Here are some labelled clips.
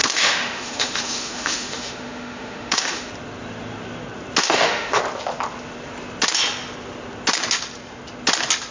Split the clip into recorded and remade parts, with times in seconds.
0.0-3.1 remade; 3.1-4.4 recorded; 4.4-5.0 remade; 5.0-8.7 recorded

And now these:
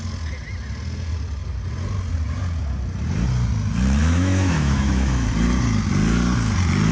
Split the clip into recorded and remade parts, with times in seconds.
0.0-4.0 recorded; 4.0-5.3 remade; 5.3-6.9 recorded

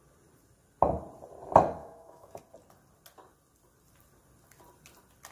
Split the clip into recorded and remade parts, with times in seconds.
0.0-1.8 recorded; 1.8-2.4 remade; 2.4-5.3 recorded